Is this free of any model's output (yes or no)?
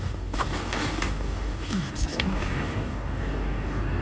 no